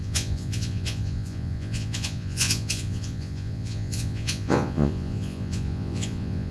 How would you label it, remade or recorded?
remade